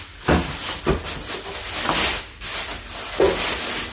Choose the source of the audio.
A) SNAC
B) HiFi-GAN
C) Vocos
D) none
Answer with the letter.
D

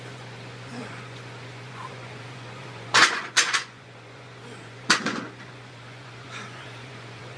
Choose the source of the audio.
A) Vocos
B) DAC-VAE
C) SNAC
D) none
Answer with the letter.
A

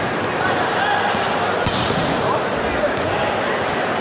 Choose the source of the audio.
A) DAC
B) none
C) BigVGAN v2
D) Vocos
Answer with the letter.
B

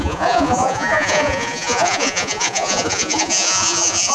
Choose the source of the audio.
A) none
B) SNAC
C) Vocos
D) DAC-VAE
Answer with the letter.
C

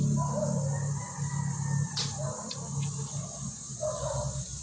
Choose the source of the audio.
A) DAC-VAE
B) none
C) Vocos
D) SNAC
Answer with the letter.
B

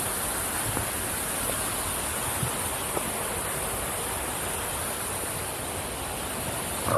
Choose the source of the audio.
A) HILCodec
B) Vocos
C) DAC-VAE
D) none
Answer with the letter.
D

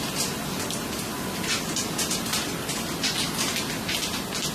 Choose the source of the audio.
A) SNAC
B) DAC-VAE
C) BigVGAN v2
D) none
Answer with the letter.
D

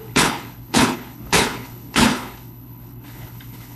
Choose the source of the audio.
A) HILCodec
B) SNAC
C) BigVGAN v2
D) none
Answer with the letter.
A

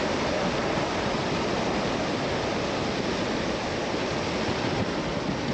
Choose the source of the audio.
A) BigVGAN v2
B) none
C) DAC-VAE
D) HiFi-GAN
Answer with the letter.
B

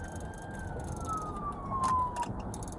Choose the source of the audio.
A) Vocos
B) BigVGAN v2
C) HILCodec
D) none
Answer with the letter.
D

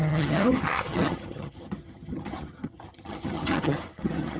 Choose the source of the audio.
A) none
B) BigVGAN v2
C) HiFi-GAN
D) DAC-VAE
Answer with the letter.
C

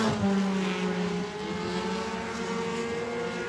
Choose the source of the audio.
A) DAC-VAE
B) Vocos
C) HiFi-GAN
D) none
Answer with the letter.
D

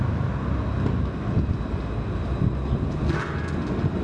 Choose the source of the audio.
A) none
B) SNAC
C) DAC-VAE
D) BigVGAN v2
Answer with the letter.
A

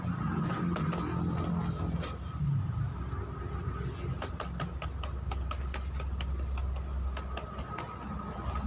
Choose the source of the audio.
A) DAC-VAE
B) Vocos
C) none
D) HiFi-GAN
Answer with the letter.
C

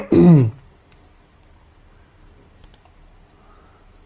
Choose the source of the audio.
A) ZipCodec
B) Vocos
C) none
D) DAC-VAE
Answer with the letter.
C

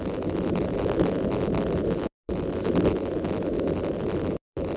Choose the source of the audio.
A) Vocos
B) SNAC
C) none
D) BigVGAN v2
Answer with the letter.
D